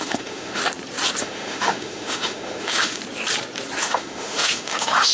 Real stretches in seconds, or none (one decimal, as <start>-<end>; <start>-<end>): 0.6-1.2; 3.0-3.8